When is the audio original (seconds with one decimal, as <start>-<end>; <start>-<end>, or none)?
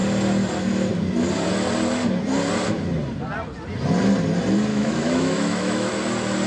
0.0-4.7; 5.9-6.5